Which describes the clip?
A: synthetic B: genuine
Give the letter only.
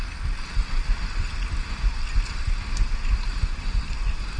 B